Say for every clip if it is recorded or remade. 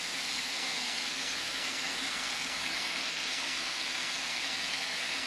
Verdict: remade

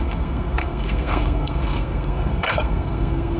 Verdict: remade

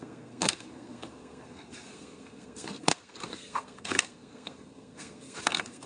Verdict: remade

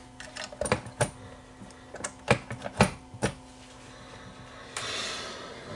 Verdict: recorded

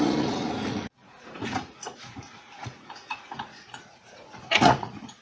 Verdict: remade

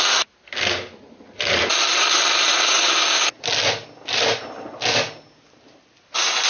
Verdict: recorded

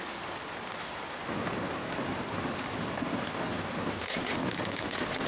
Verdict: recorded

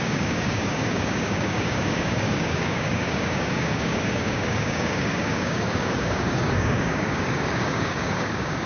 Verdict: remade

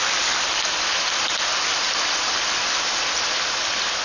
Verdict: recorded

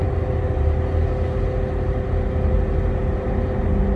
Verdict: recorded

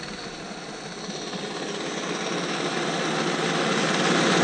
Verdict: recorded